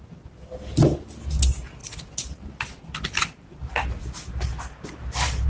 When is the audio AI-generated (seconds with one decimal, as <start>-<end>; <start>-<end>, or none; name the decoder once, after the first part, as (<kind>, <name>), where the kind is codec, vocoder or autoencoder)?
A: none